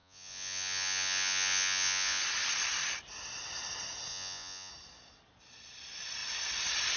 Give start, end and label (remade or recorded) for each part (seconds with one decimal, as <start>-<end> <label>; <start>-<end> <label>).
0.0-2.2 remade; 2.2-4.1 recorded; 4.1-4.7 remade; 4.7-7.0 recorded